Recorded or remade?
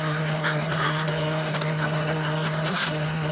remade